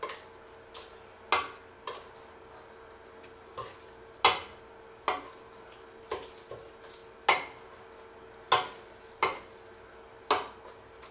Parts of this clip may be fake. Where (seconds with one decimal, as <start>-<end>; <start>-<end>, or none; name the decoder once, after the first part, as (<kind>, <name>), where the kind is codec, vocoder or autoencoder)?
none

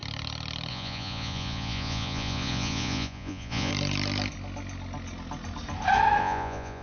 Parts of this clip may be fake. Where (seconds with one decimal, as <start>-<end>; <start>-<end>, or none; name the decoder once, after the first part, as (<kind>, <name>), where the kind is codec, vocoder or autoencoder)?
0.7-3.7 (vocoder, Vocos); 6.2-6.8